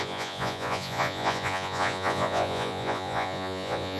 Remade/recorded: remade